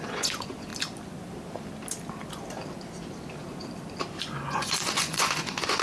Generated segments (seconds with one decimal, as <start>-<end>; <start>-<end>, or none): 0.0-0.7; 4.2-5.8